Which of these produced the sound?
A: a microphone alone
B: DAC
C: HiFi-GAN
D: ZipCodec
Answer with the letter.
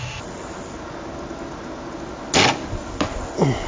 A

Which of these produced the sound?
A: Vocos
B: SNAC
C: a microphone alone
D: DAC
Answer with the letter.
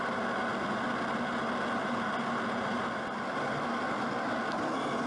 C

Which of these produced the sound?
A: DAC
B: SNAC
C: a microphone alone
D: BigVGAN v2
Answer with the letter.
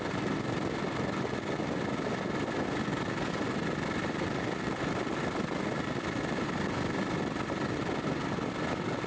C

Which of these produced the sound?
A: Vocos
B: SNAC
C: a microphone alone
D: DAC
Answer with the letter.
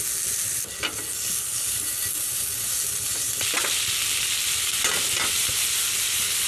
C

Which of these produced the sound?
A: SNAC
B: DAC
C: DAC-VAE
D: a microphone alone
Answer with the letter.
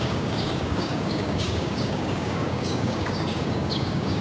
B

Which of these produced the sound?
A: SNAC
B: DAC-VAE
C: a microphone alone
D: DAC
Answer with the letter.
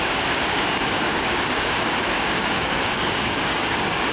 D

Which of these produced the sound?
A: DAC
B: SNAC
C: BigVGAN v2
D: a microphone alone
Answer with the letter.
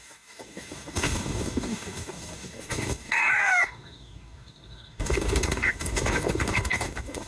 A